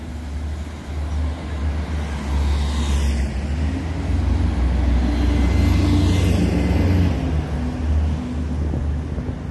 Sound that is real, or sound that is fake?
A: real